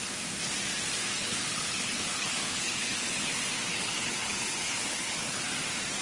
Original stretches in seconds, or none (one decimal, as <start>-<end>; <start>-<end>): 0.0-1.2; 3.3-3.7; 5.4-6.0